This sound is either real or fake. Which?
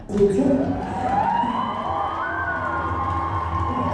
real